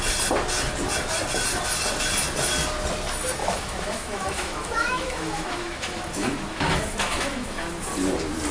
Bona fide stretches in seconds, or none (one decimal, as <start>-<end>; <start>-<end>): 0.0-3.4; 7.9-8.5